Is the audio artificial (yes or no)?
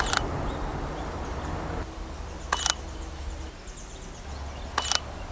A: no